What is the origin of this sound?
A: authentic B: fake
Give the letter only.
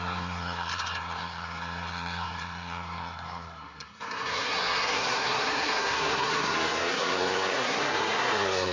B